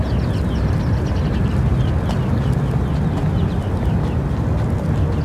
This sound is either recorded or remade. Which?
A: recorded